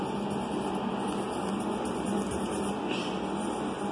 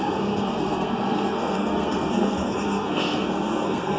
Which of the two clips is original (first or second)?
first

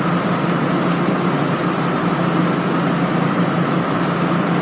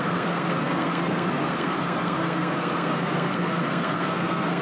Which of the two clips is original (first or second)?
first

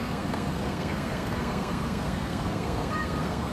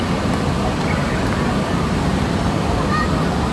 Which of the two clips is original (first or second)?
second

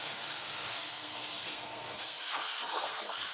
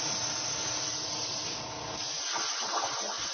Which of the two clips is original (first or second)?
second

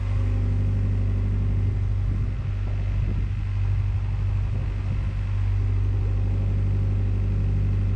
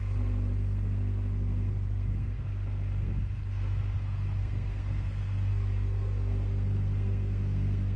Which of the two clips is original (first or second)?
first